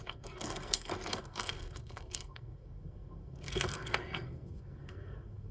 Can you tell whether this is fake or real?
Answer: fake